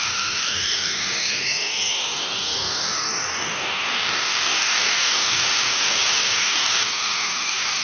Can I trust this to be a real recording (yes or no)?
no